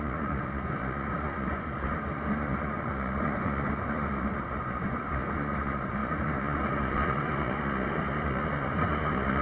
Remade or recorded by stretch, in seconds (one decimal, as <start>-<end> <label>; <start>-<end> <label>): 0.0-9.4 remade